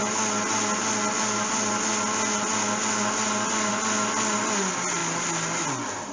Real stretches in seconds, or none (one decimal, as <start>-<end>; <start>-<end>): 0.0-6.1